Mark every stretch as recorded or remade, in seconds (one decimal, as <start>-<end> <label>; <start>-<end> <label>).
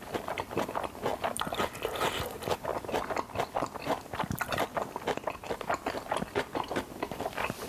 0.0-2.7 remade; 2.7-6.9 recorded; 6.9-7.7 remade